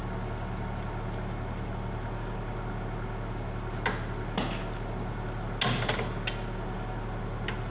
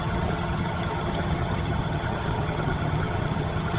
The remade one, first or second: second